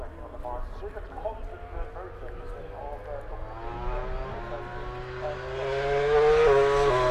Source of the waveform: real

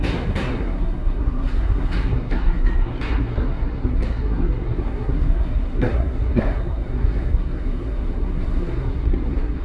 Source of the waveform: fake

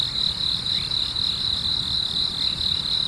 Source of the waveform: real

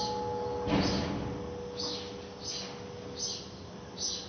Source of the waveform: real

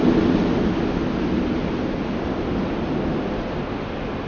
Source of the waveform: real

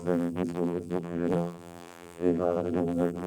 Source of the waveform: fake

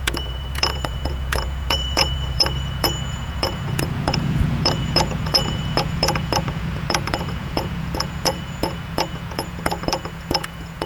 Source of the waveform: fake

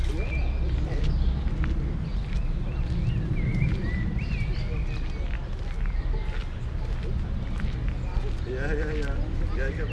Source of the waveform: real